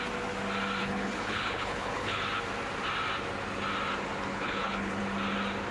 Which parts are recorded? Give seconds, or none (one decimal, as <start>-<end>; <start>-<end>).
0.0-0.8; 2.2-4.3; 5.0-5.7